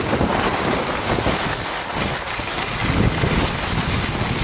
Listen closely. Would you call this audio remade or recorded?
recorded